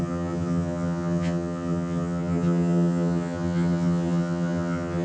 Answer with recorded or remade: remade